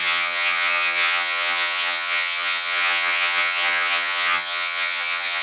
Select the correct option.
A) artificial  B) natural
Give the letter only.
A